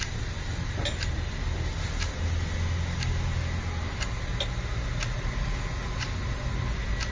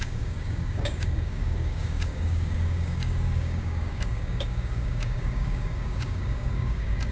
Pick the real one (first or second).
first